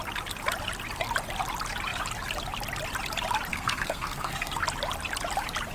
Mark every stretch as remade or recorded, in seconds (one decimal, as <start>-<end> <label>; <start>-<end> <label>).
0.0-3.5 recorded; 3.5-4.6 remade; 4.6-5.7 recorded